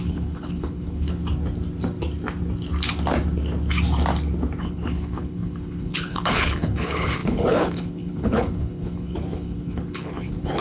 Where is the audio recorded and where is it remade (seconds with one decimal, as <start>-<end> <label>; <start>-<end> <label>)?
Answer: 0.0-1.2 remade; 1.2-4.6 recorded; 4.6-10.6 remade